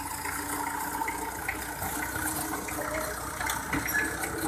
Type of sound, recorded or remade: recorded